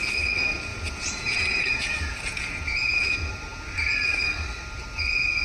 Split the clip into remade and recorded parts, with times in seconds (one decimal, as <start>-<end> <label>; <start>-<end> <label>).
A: 0.0-0.7 recorded; 0.7-3.3 remade; 3.3-5.4 recorded